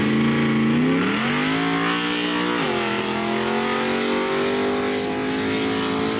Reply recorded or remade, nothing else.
recorded